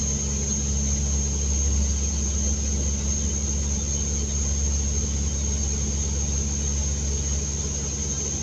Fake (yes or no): no